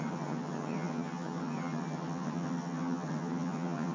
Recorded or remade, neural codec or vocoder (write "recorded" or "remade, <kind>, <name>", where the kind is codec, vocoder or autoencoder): remade, vocoder, HiFi-GAN